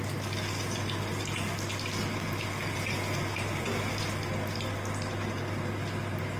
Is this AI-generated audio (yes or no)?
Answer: no